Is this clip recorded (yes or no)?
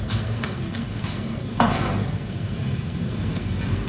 no